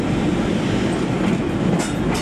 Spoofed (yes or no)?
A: no